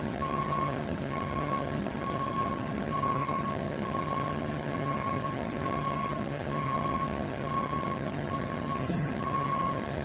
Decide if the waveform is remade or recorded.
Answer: remade